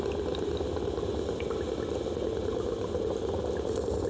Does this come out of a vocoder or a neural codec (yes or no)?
no